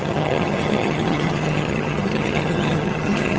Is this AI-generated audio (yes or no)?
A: yes